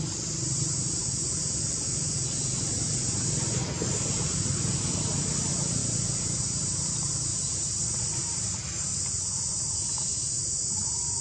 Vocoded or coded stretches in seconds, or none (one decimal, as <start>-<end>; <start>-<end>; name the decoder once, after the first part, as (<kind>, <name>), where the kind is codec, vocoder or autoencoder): none